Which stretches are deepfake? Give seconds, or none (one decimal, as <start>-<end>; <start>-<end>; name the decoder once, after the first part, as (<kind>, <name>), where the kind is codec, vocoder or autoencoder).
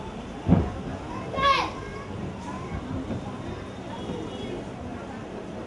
1.9-2.8 (vocoder, BigVGAN v2); 4.9-5.7